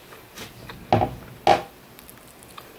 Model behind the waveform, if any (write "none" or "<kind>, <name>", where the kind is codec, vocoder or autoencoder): none